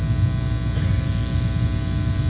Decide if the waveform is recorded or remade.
recorded